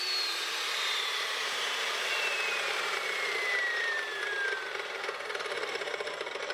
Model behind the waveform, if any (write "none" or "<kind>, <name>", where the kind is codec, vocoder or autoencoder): vocoder, BigVGAN v2